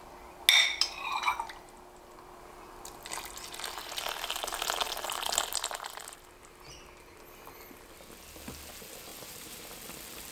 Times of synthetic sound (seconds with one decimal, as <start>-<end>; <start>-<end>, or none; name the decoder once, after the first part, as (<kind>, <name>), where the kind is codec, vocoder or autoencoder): 9.1-9.6 (vocoder, BigVGAN v2)

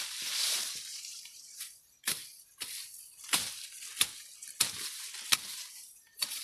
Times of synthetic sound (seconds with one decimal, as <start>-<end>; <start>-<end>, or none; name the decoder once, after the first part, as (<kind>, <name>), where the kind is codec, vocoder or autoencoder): 0.0-2.2 (vocoder, BigVGAN v2); 5.7-6.4